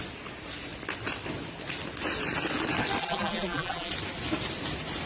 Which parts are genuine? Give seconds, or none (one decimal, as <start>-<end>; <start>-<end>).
0.0-3.0; 3.9-5.1